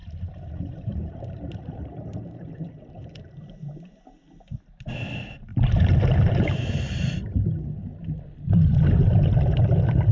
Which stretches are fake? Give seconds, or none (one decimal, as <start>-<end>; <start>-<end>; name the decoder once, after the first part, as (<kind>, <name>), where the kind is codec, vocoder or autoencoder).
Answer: 0.0-3.3 (vocoder, BigVGAN v2); 5.5-7.1